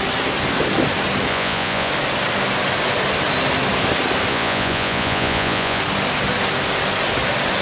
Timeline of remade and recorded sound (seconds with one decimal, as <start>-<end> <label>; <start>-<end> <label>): 0.0-1.3 recorded; 1.3-1.9 remade; 1.9-4.3 recorded; 4.3-5.8 remade; 5.8-7.6 recorded

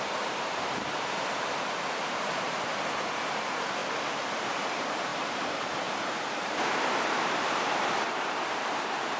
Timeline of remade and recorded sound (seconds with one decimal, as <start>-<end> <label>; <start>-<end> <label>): 0.0-3.8 remade; 3.8-4.3 recorded; 4.3-9.2 remade

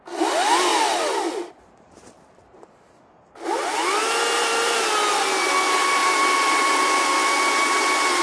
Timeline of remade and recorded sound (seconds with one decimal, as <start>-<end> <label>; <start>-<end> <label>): 0.0-8.2 recorded

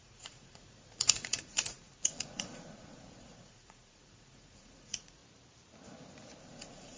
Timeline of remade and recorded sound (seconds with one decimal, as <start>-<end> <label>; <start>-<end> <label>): 0.0-5.2 remade; 5.2-6.4 recorded; 6.4-7.0 remade

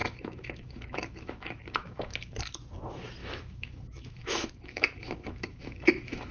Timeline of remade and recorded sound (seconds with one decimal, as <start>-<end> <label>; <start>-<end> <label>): 0.0-2.4 remade; 2.4-3.2 recorded; 3.2-6.3 remade